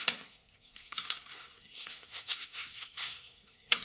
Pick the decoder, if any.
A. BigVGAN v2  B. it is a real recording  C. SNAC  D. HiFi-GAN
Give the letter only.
C